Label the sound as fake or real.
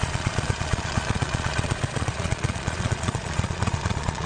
fake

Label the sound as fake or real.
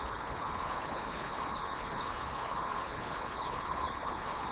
fake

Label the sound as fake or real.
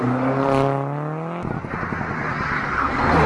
real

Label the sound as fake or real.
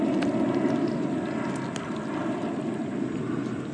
real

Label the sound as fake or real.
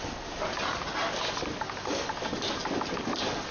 real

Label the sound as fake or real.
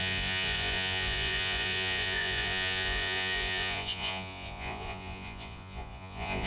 fake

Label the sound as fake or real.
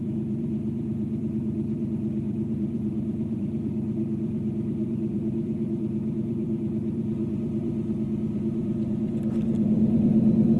fake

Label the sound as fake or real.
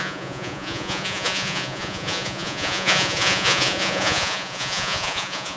fake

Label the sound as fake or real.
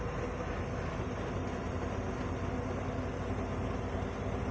real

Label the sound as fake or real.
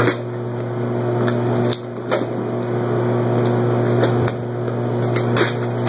real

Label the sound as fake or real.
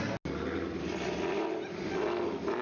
real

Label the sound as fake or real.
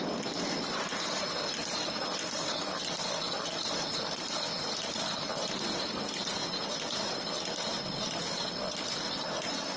real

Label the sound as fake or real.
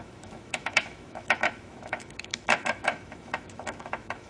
fake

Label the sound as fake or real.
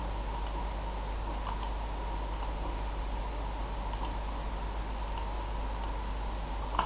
real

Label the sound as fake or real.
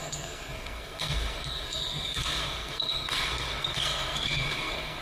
fake